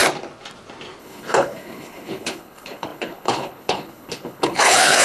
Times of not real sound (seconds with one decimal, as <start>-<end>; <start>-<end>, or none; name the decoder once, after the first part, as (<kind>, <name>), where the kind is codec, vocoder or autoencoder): 1.0-5.0 (codec, HILCodec)